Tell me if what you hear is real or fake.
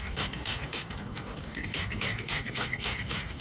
fake